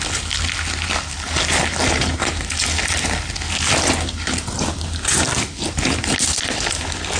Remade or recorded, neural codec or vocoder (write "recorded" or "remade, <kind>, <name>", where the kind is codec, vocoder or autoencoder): recorded